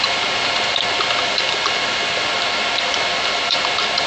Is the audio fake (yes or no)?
no